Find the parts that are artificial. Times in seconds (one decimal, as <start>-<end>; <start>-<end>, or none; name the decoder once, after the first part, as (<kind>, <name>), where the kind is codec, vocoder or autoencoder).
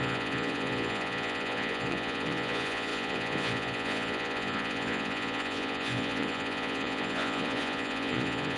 0.0-8.6 (vocoder, Vocos)